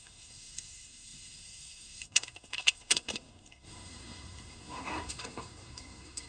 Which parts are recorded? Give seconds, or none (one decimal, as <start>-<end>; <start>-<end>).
none